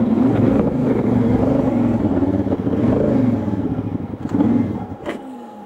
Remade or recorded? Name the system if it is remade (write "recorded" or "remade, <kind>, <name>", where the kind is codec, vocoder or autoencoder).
remade, codec, SNAC